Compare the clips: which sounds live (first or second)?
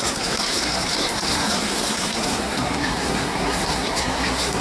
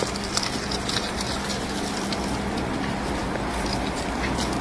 second